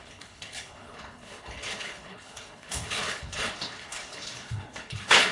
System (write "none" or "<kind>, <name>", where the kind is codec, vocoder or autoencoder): codec, HILCodec